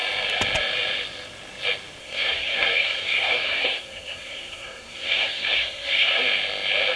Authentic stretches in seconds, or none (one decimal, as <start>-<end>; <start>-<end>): 0.0-2.0; 6.2-7.0